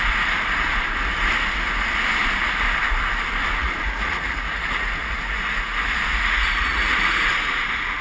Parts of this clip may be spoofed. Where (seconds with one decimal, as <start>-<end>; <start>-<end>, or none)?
3.6-7.3

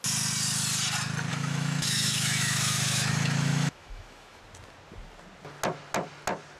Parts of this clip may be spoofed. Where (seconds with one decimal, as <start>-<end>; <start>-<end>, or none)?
1.3-4.4